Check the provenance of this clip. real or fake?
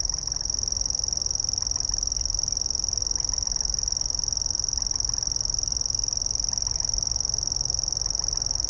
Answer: real